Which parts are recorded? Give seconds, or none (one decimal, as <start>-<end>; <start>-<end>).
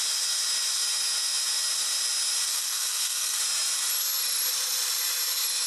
0.0-2.5; 3.4-5.7